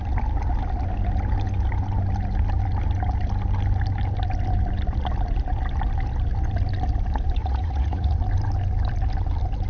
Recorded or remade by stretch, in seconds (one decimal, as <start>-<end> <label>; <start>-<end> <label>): 0.0-7.4 recorded; 7.4-8.2 remade; 8.2-9.7 recorded